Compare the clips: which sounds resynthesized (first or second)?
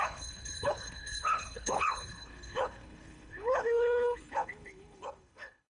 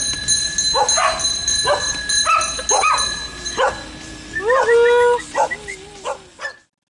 first